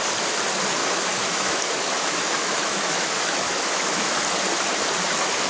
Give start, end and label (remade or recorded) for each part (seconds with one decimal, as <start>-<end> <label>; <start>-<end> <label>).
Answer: 0.0-0.8 recorded; 0.8-4.1 remade; 4.1-5.5 recorded